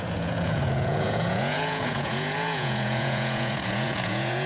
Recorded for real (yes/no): no